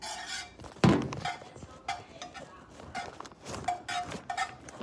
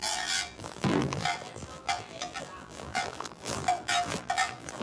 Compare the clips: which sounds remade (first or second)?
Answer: second